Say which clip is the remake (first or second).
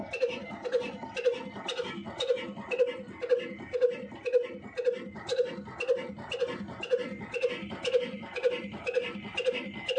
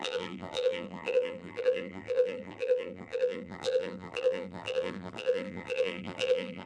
second